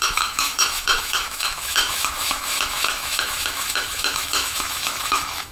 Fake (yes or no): yes